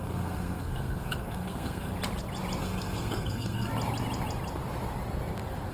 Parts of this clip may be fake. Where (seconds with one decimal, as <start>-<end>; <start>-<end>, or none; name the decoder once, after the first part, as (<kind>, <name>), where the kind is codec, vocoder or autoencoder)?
0.0-1.9 (codec, SNAC); 2.6-3.7